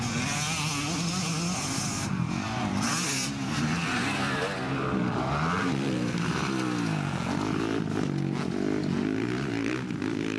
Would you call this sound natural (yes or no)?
yes